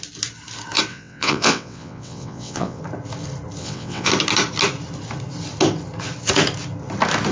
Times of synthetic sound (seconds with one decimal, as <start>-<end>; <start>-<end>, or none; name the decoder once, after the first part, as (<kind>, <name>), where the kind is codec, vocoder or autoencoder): 0.9-2.8 (vocoder, WaveNeXt); 3.6-4.1